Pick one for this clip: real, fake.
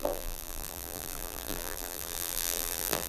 fake